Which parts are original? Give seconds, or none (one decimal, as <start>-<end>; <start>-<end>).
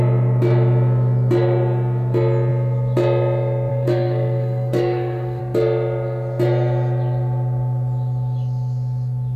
0.0-3.7; 5.4-9.4